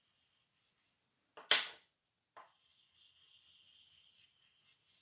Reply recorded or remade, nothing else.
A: recorded